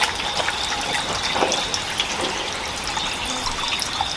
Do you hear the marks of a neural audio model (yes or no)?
no